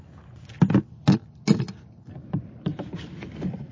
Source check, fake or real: real